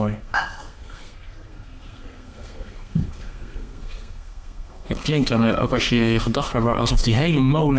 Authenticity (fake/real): fake